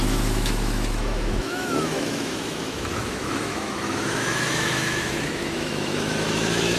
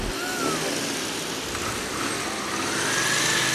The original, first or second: second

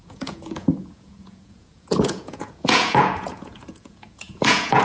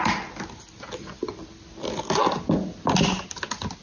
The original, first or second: second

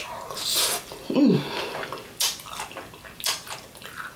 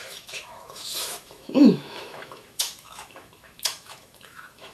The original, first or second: first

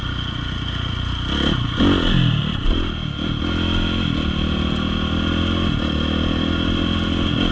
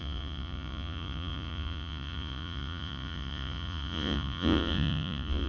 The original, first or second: first